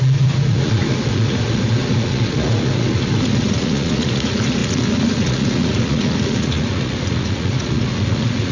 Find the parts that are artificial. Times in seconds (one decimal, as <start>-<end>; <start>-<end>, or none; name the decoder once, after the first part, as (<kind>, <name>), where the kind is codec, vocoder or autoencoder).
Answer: 0.0-8.5 (vocoder, Vocos)